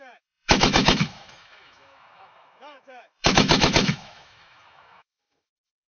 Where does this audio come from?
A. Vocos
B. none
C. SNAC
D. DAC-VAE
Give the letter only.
D